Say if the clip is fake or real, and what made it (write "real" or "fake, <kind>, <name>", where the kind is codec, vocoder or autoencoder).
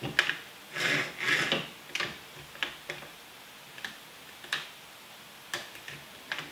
real